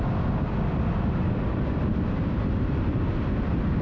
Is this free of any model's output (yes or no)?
yes